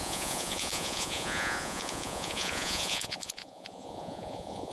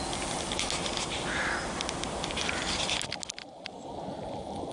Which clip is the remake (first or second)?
first